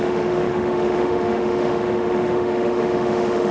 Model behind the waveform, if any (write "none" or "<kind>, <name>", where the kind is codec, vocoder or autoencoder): autoencoder, DAC-VAE